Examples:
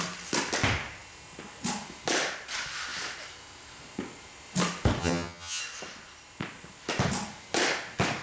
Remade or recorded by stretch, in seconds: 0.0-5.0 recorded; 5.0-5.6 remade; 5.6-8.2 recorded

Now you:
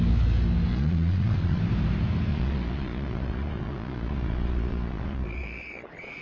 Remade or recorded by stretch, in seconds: 0.0-0.7 recorded; 0.7-1.6 remade; 1.6-2.3 recorded; 2.3-6.2 remade